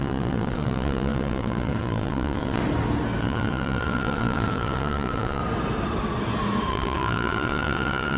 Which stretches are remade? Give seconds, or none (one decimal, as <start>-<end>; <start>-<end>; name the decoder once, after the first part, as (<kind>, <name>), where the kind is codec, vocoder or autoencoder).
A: 0.0-2.6 (vocoder, WaveNeXt); 3.2-5.4; 6.7-8.2